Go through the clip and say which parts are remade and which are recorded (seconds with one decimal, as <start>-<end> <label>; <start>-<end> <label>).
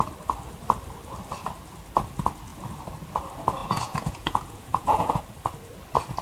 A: 0.0-3.6 recorded; 3.6-5.2 remade; 5.2-6.2 recorded